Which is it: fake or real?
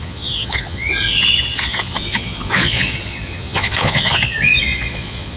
fake